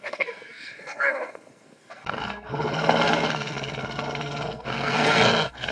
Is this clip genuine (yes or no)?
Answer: no